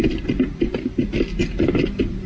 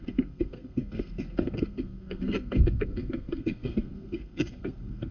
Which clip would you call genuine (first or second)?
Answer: first